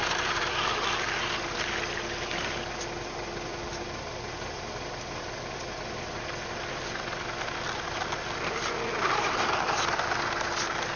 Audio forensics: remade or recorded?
recorded